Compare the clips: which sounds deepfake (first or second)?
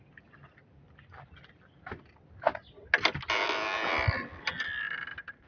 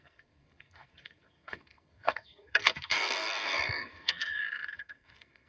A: second